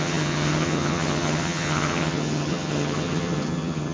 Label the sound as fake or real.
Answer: fake